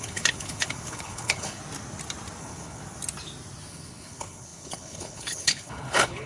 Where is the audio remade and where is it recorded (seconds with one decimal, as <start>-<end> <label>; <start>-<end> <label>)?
0.0-1.6 remade; 1.6-2.4 recorded; 2.4-2.8 remade; 2.8-3.7 recorded; 3.7-6.3 remade